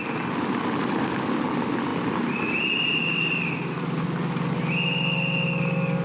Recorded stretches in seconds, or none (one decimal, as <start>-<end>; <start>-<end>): 0.0-6.0